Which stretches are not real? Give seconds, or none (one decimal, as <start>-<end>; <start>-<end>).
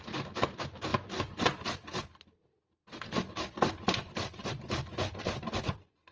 none